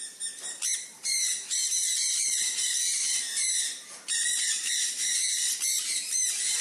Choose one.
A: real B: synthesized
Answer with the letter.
B